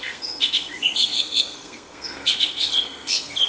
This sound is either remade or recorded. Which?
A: remade